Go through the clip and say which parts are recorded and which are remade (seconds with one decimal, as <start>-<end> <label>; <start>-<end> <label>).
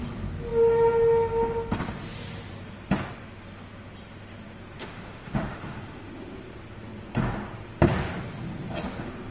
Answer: 0.0-4.8 recorded; 4.8-6.1 remade; 6.1-9.3 recorded